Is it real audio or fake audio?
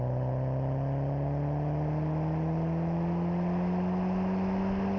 real